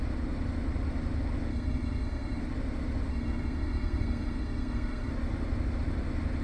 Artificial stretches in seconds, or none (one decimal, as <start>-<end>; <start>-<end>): 1.5-2.4; 3.1-5.1